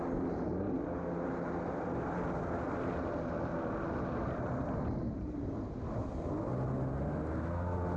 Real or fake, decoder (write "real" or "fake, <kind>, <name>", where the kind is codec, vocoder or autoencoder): real